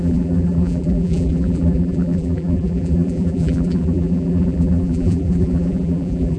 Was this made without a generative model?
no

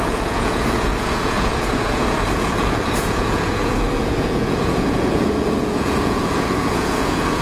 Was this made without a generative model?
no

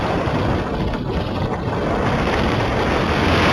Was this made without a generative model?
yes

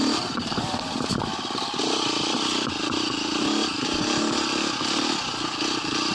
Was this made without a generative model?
yes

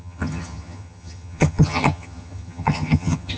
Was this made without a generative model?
no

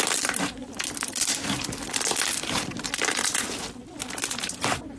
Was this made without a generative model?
yes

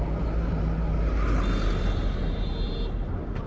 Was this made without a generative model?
yes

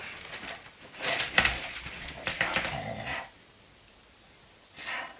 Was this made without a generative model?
yes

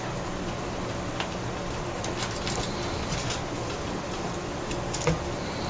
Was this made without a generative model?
yes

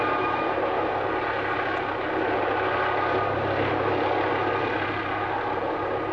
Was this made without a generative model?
yes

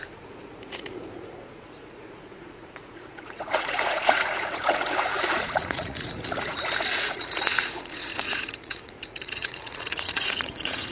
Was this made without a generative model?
no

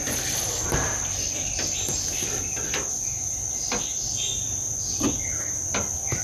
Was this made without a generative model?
yes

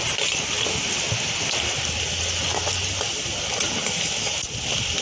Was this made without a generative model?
yes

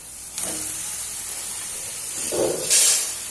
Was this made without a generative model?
no